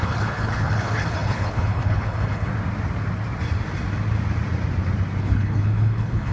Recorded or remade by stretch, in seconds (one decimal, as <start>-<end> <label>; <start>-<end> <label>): 0.0-2.5 remade; 2.5-5.2 recorded; 5.2-6.3 remade